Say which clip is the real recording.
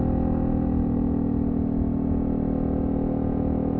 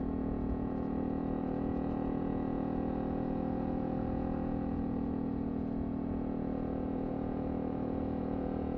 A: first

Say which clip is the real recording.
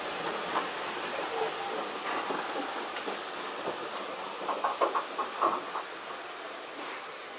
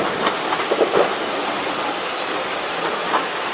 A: first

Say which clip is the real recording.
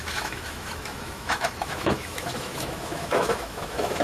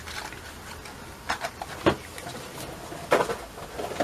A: second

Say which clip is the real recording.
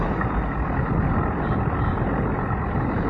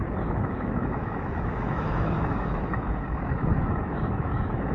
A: first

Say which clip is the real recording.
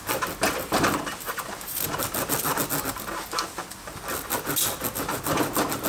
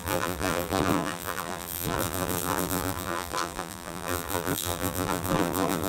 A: first